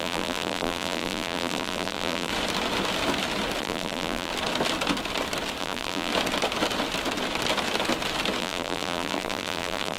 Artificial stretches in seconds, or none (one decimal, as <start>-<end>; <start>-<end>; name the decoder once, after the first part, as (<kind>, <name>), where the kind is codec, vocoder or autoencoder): 0.0-2.3 (vocoder, BigVGAN v2); 3.6-4.3; 5.6-6.1; 8.4-10.0